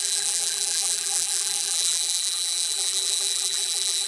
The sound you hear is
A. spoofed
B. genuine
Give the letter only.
A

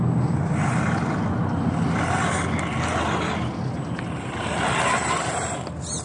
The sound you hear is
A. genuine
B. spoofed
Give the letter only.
A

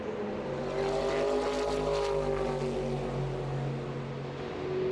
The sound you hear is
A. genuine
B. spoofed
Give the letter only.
A